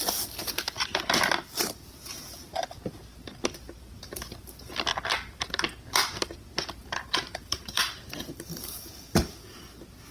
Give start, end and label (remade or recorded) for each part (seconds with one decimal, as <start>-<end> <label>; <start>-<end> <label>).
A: 0.0-6.8 recorded; 6.8-9.3 remade; 9.3-10.1 recorded